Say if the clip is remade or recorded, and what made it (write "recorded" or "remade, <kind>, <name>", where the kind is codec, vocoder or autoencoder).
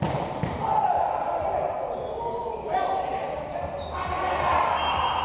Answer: recorded